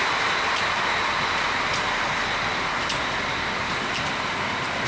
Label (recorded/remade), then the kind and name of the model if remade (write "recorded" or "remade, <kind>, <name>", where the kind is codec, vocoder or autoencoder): recorded